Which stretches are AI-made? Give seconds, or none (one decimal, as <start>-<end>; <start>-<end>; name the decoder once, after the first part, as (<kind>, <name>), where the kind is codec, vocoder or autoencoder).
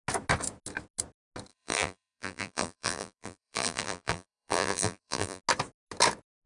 1.5-5.4 (vocoder, BigVGAN v2)